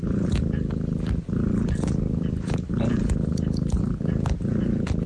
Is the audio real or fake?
fake